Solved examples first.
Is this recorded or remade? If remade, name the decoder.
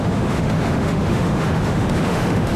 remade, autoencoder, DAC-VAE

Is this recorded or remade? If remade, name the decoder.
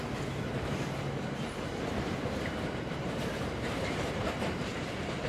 remade, vocoder, BigVGAN v2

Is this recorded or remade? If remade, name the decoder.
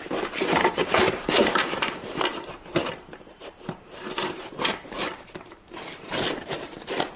remade, vocoder, BigVGAN v2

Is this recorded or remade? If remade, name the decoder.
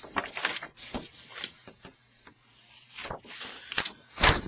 remade, vocoder, BigVGAN v2